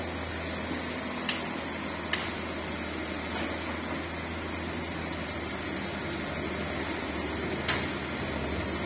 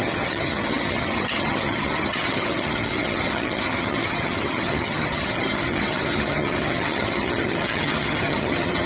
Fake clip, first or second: second